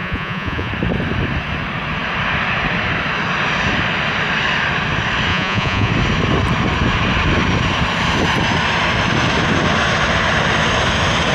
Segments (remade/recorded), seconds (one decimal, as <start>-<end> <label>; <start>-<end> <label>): 0.0-0.7 remade; 0.7-5.3 recorded; 5.3-5.9 remade; 5.9-11.3 recorded